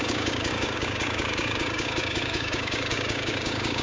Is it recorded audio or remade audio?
remade